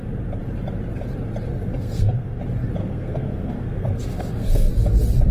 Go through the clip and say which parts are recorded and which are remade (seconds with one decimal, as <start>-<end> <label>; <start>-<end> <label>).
0.0-1.5 recorded; 1.5-2.4 remade; 2.4-2.8 recorded; 2.8-4.7 remade; 4.7-5.3 recorded